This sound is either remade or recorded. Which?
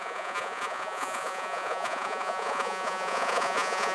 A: remade